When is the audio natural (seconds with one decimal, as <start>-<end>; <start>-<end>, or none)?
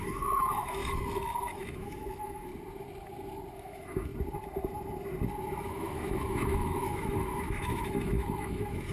0.8-1.4; 2.5-3.5; 4.1-5.6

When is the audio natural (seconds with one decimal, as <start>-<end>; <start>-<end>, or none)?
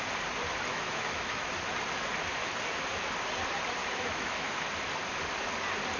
0.0-0.7; 1.5-3.8; 4.5-6.0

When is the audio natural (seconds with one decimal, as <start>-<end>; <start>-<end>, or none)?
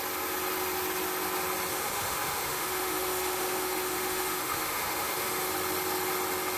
0.0-1.7; 5.5-6.6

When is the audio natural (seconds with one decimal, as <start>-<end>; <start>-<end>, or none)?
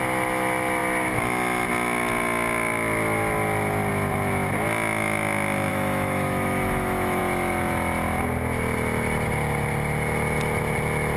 0.0-5.7; 7.2-11.2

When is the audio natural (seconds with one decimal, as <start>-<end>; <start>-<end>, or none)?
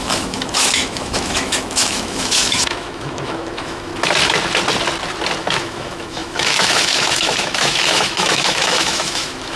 3.9-5.4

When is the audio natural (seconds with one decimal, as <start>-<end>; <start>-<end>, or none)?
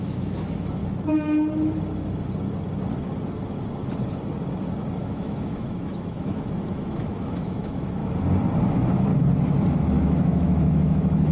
0.8-4.9; 8.0-8.6; 9.1-9.8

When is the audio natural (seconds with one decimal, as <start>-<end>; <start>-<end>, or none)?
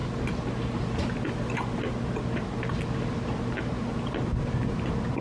0.0-5.2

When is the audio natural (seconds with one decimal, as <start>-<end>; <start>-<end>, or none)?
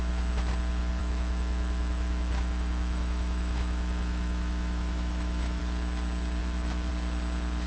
0.0-1.0; 5.6-6.4; 6.9-7.7